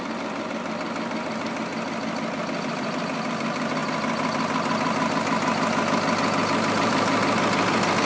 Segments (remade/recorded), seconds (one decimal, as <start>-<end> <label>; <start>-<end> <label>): 0.0-1.7 remade; 1.7-2.7 recorded; 2.7-3.8 remade; 3.8-6.7 recorded; 6.7-8.1 remade